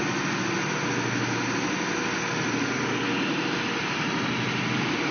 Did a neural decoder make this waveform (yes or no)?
no